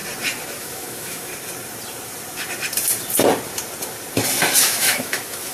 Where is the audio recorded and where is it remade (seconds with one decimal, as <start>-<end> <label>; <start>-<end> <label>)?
0.0-0.6 recorded; 0.6-1.3 remade; 1.3-4.6 recorded; 4.6-5.5 remade